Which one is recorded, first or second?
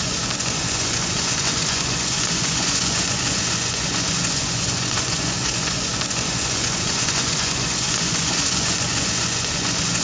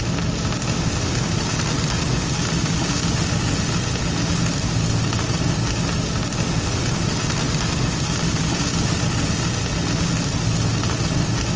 second